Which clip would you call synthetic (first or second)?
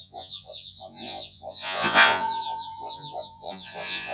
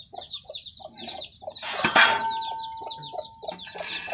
first